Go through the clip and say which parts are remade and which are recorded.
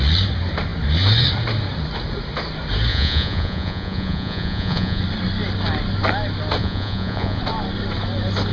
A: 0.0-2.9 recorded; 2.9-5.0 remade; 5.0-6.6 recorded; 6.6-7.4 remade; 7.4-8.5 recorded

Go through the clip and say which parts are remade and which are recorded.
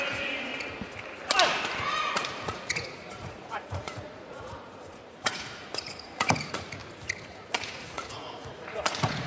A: 0.0-0.5 remade; 0.5-2.0 recorded; 2.0-6.8 remade; 6.8-7.3 recorded; 7.3-9.3 remade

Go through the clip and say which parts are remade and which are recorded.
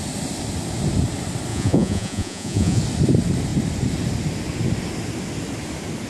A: 0.0-1.5 recorded; 1.5-2.8 remade; 2.8-6.1 recorded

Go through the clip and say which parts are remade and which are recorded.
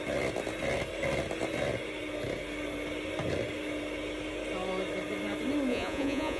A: 0.0-5.7 recorded; 5.7-6.4 remade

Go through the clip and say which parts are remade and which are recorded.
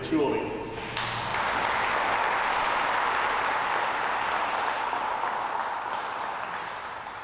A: 0.0-7.2 recorded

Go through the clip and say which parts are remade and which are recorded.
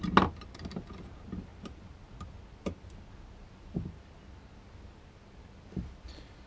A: 0.0-6.5 recorded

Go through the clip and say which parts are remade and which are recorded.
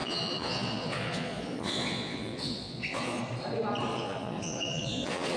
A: 0.0-3.2 remade; 3.2-3.9 recorded; 3.9-5.4 remade